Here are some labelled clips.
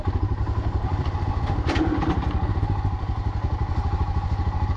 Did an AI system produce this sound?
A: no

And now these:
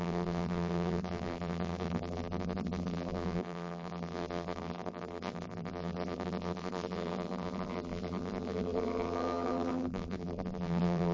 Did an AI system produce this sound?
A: yes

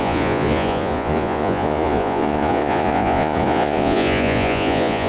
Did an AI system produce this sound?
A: yes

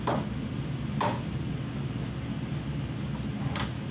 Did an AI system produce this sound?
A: no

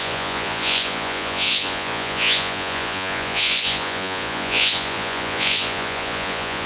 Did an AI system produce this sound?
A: yes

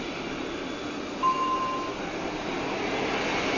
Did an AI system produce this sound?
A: no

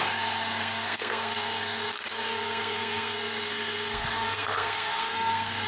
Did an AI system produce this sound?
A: yes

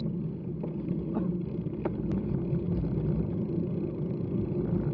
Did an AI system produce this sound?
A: no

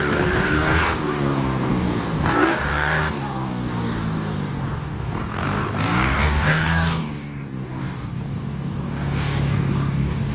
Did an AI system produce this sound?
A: yes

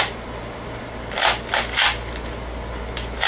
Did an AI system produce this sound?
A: no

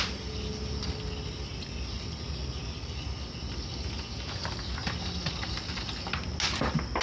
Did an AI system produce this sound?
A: no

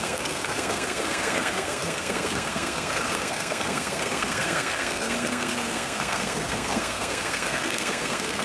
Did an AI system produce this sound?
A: yes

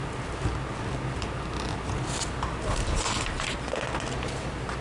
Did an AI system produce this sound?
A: no